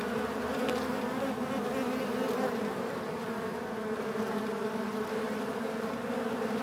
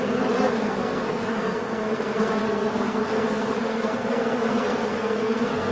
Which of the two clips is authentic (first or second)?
first